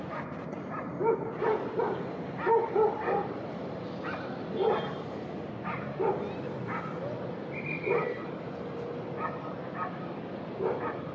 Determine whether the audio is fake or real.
real